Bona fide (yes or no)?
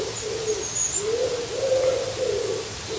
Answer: yes